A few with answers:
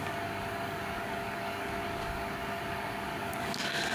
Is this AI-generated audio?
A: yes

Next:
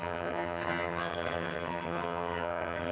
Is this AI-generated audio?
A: yes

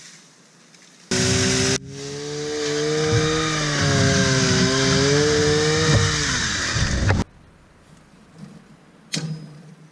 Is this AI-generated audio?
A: no